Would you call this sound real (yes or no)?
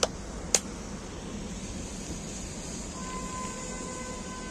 yes